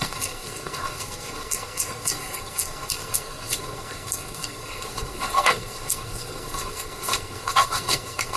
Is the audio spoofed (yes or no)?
yes